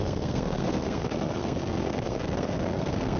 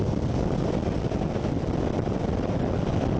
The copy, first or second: first